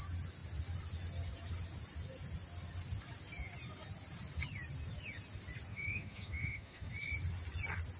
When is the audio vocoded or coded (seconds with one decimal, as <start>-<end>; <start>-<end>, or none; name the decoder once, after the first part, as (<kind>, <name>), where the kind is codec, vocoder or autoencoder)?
5.7-6.9 (autoencoder, DAC-VAE)